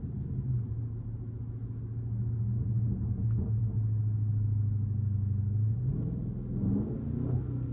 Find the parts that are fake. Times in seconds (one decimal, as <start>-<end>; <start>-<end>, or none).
none